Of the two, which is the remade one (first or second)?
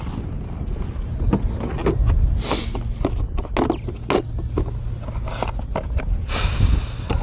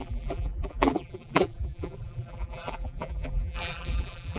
second